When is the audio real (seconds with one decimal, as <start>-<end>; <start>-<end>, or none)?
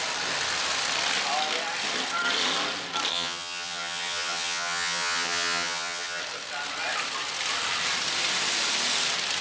0.0-3.1; 6.2-9.4